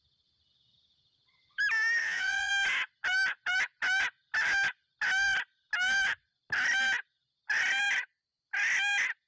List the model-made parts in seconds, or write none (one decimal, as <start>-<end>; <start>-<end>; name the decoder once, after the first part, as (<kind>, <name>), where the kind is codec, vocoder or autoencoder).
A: 2.0-2.5 (vocoder, Vocos)